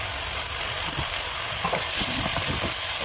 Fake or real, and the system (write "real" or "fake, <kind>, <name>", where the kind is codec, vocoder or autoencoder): real